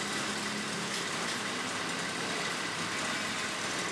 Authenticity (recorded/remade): recorded